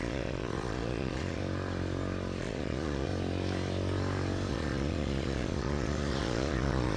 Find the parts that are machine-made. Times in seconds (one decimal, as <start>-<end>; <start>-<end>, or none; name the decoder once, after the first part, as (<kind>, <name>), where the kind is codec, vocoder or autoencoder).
0.0-1.4 (vocoder, Vocos); 2.4-3.1; 4.5-7.0